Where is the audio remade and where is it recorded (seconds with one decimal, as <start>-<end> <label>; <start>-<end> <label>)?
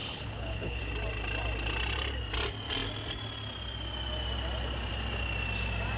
0.0-0.8 remade; 0.8-6.0 recorded